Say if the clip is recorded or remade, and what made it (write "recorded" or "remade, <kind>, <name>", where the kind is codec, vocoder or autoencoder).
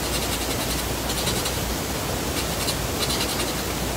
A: recorded